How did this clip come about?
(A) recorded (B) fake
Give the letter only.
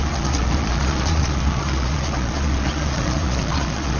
B